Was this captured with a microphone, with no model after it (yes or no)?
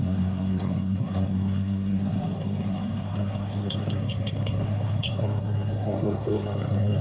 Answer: no